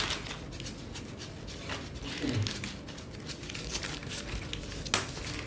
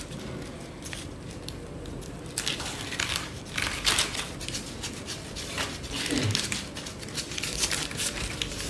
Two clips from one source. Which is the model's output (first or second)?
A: second